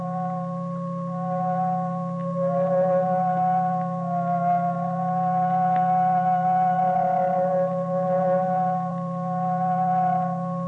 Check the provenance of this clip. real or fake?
real